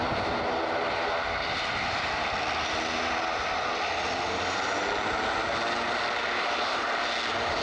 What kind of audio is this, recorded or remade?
recorded